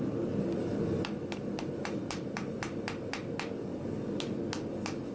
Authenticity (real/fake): real